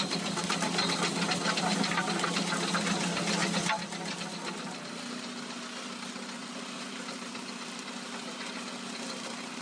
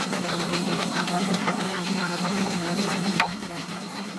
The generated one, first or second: second